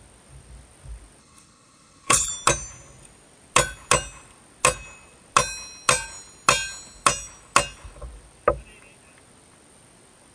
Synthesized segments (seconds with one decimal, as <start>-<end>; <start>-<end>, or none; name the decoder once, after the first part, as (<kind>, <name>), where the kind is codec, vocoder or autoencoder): 1.2-2.3 (codec, HILCodec)